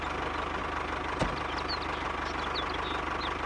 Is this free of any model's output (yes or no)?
yes